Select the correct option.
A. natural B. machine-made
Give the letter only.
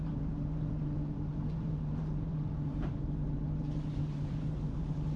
B